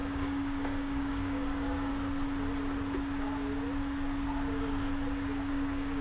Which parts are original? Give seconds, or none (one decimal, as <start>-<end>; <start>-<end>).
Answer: 1.9-5.5